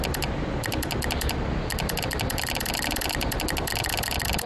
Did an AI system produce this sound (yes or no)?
no